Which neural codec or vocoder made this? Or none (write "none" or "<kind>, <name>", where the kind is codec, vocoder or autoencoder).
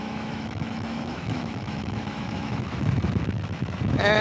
autoencoder, DAC-VAE